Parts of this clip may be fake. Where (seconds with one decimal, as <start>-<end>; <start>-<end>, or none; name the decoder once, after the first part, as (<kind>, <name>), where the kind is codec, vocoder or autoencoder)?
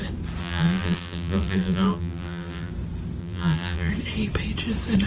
0.4-2.7 (vocoder, BigVGAN v2); 3.2-3.9